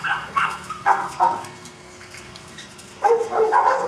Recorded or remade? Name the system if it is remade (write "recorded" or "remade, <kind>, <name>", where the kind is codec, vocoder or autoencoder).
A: remade, codec, SNAC